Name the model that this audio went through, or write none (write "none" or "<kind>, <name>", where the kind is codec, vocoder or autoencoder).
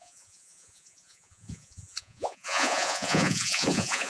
vocoder, Vocos